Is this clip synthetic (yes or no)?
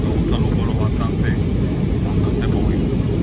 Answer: no